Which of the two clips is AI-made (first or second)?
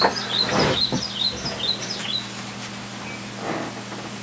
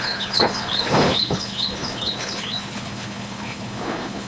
second